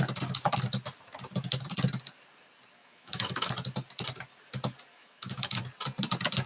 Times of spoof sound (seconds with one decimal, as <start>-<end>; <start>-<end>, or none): 2.8-3.5; 4.9-5.6